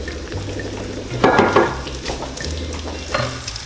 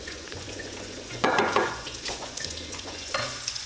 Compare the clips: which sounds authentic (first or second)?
first